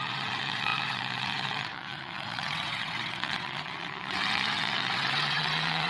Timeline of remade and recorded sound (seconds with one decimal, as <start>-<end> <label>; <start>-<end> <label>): 0.0-5.9 remade